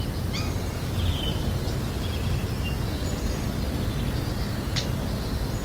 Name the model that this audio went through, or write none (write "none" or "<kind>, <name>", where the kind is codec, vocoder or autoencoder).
none